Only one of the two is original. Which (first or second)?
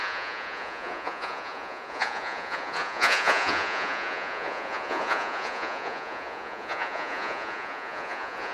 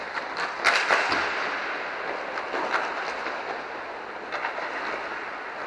second